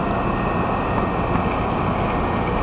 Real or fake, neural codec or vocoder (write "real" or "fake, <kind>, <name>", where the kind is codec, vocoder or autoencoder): real